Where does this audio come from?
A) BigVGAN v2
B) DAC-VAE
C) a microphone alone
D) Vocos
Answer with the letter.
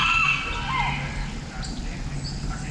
C